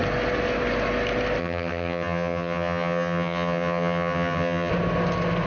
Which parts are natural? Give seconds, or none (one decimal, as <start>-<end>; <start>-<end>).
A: 0.0-1.4; 4.7-5.5